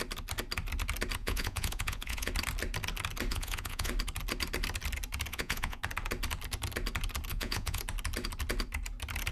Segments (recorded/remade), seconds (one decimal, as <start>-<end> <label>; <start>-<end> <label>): 0.0-1.2 recorded; 1.2-2.3 remade; 2.3-3.3 recorded; 3.3-3.9 remade; 3.9-5.3 recorded; 5.3-5.8 remade; 5.8-7.3 recorded; 7.3-7.8 remade; 7.8-9.3 recorded